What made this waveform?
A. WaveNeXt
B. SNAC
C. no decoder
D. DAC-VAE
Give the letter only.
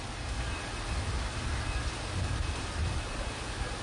C